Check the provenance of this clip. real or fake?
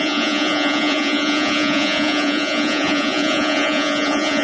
fake